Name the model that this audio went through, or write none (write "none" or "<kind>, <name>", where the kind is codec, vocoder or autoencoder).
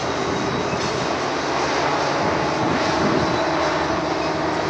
none